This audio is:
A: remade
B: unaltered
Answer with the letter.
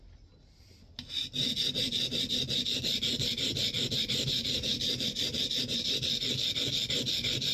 B